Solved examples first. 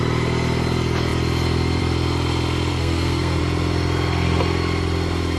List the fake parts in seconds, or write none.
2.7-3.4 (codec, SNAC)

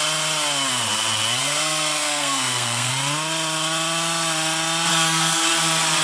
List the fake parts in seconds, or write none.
1.4-2.9 (codec, SNAC); 4.9-5.5

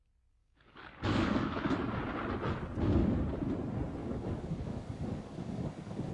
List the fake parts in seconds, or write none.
0.4-1.7 (codec, DAC); 4.0-6.1

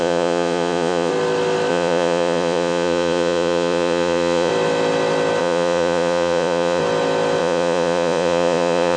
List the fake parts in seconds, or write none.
0.0-1.1 (vocoder, Vocos); 1.7-4.5; 5.4-6.8; 7.4-9.0

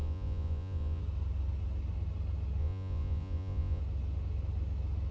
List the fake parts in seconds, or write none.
0.0-1.0 (vocoder, Vocos); 2.6-3.8